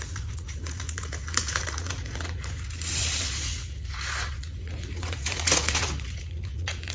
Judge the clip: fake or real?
fake